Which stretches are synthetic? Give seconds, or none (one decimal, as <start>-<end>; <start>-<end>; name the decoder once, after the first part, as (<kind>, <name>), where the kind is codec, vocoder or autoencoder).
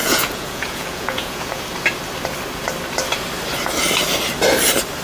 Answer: 0.0-1.6 (vocoder, Vocos)